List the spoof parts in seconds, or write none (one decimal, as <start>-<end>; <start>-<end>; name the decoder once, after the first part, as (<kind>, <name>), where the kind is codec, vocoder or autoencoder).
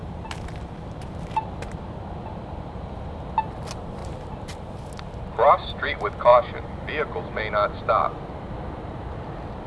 0.0-1.6 (vocoder, BigVGAN v2); 4.0-4.9